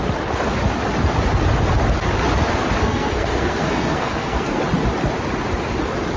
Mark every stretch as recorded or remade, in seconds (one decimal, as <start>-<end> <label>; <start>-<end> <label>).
0.0-2.8 recorded; 2.8-4.6 remade; 4.6-6.2 recorded